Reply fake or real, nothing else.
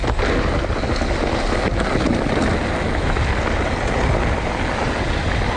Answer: real